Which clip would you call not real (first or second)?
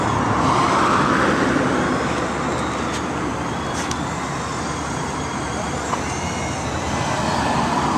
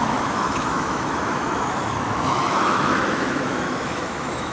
second